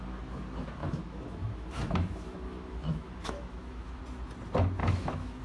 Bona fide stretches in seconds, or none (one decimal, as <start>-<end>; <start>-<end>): 0.0-0.8; 4.0-4.8